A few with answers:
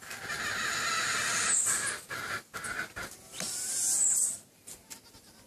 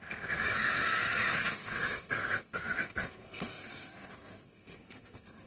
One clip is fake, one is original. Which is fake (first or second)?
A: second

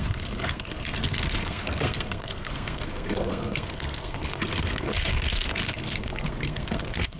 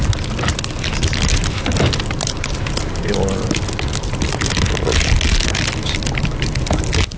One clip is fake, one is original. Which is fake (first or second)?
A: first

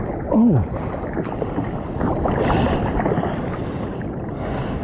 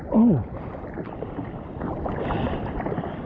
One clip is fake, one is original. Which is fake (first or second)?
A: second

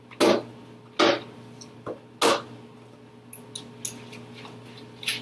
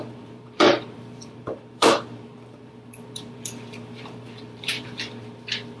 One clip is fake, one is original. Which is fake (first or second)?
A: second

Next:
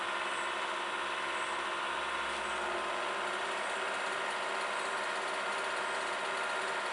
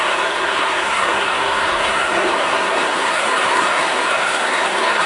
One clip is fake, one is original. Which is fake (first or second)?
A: second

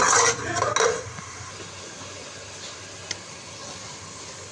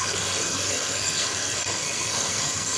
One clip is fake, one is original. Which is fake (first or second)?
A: second